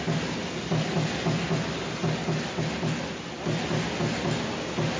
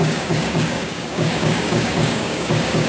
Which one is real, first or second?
first